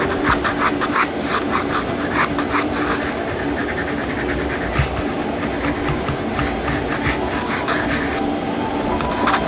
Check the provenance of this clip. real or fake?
real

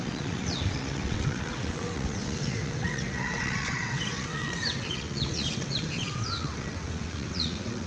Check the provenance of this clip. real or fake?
fake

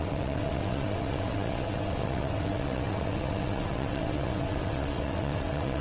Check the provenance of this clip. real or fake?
fake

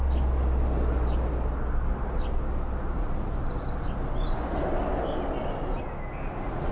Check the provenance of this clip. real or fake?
real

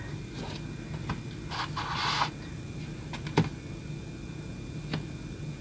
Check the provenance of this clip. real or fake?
real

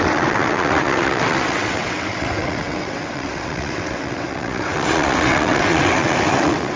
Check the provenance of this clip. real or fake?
fake